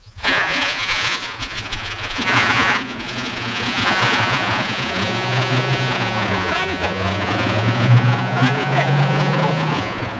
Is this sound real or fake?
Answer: fake